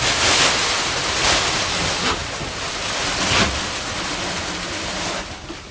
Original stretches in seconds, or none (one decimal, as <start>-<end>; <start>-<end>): 0.0-5.7